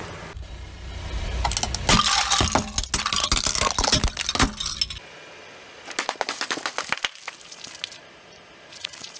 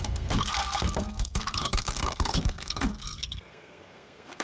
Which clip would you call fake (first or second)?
second